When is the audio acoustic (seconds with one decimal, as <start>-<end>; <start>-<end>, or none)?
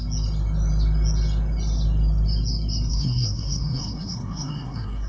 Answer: 0.0-2.9